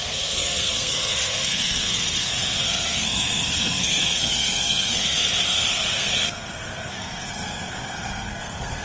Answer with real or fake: fake